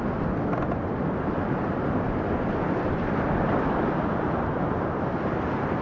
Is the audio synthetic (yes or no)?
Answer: no